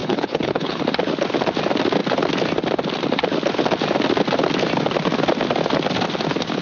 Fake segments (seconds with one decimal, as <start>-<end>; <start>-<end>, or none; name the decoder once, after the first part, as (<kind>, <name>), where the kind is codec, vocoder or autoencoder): 0.0-0.8 (codec, HILCodec)